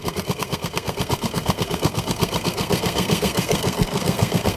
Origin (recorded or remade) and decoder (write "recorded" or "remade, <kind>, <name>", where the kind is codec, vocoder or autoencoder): remade, codec, SNAC